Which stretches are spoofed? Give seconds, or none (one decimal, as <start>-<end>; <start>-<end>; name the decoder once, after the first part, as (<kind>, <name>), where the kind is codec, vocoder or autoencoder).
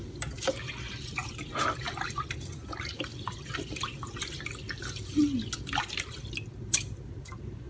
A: none